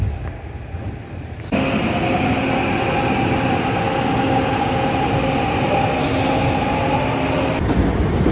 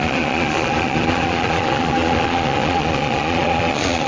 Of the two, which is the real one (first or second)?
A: first